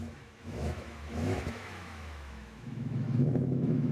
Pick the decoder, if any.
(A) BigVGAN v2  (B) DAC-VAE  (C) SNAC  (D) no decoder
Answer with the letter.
B